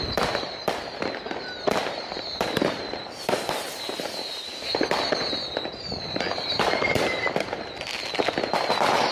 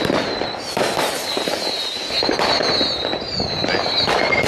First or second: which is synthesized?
first